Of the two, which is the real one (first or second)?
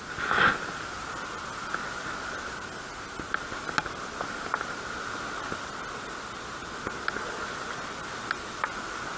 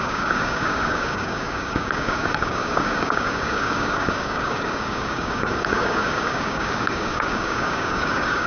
first